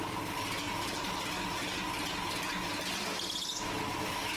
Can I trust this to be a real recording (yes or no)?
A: yes